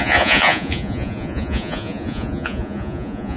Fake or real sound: fake